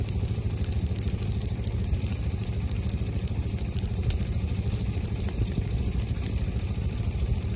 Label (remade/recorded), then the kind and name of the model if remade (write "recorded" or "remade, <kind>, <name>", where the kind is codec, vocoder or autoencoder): recorded